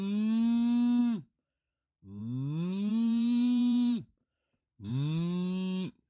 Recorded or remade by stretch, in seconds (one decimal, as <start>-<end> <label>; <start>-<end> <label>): 0.0-2.9 recorded; 2.9-4.9 remade; 4.9-6.1 recorded